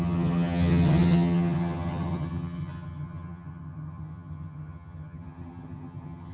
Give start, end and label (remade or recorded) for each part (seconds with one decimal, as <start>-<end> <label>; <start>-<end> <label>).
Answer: 0.0-6.3 remade